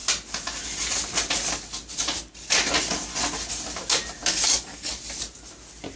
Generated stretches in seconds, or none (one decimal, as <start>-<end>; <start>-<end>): 4.2-4.9